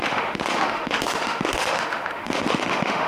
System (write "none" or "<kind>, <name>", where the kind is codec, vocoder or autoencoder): autoencoder, DAC-VAE